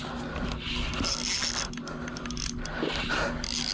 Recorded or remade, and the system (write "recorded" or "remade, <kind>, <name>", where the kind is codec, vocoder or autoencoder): recorded